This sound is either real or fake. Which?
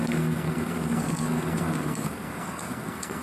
fake